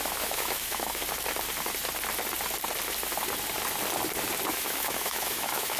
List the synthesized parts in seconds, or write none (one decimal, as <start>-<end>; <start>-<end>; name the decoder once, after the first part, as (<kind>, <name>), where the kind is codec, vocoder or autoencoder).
0.0-1.0 (autoencoder, DAC-VAE); 4.5-5.8